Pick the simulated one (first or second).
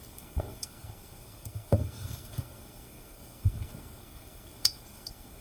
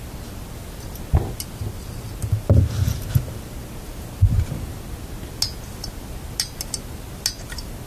first